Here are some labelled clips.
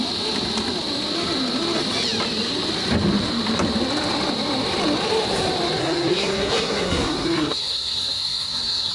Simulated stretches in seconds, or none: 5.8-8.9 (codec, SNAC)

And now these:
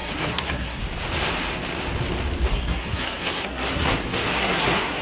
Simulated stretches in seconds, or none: 0.0-0.8 (codec, SNAC); 2.5-5.0

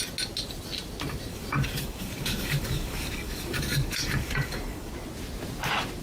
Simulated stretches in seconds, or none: 1.3-4.9 (codec, DAC)

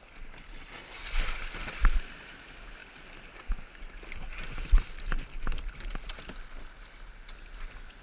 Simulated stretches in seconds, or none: none

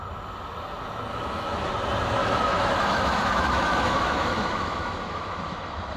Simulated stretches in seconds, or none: 1.1-1.7 (autoencoder, DAC-VAE); 2.2-6.0

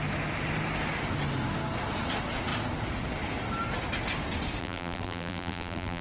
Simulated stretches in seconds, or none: 4.6-6.0 (vocoder, BigVGAN v2)

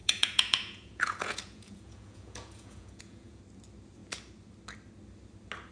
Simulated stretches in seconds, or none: 0.0-3.4 (vocoder, Vocos)

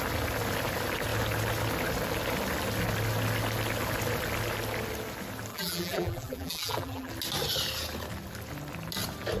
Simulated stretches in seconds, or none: 5.5-7.1 (vocoder, BigVGAN v2)